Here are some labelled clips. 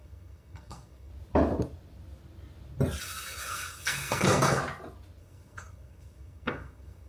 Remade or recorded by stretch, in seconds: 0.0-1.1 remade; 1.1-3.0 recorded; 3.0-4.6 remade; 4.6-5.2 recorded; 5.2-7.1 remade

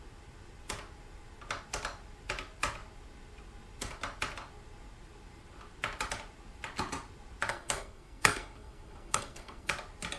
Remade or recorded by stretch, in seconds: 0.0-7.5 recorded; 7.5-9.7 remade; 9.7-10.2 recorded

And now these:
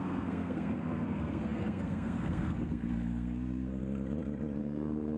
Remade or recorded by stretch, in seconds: 0.0-3.8 remade; 3.8-4.6 recorded; 4.6-5.2 remade

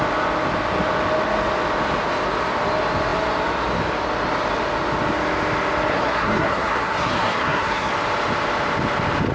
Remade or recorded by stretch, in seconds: 0.0-5.9 recorded; 5.9-7.9 remade; 7.9-9.3 recorded

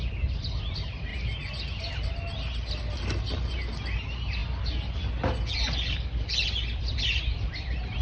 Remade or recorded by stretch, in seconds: 0.0-8.0 recorded